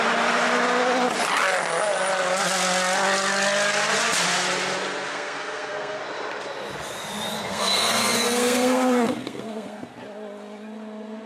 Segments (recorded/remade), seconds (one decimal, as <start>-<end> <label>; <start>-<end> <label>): 0.0-5.1 recorded; 5.1-6.0 remade; 6.0-7.3 recorded; 7.3-9.9 remade; 9.9-11.3 recorded